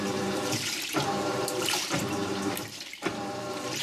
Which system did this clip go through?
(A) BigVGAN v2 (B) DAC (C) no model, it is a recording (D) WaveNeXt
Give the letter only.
A